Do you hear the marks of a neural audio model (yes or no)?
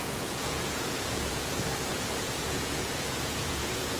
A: yes